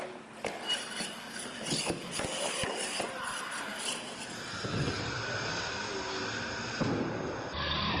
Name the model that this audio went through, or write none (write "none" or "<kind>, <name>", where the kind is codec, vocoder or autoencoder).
none